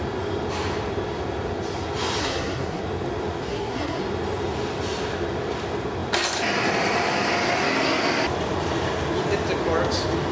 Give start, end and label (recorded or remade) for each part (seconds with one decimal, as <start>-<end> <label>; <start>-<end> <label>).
0.0-2.2 recorded; 2.2-2.8 remade; 2.8-3.5 recorded; 3.5-4.0 remade; 4.0-10.3 recorded

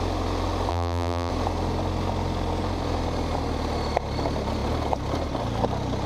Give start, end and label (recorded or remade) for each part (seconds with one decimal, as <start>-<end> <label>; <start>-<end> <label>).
0.0-0.7 recorded; 0.7-1.3 remade; 1.3-6.1 recorded

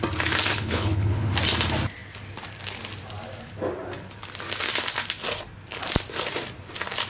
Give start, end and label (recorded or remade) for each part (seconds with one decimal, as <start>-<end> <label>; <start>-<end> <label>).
0.0-0.5 recorded; 0.5-1.3 remade; 1.3-7.1 recorded

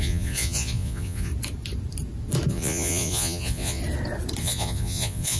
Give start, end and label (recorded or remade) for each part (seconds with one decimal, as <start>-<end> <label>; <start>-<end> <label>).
0.0-1.3 remade; 1.3-2.5 recorded; 2.5-3.8 remade; 3.8-4.4 recorded; 4.4-5.4 remade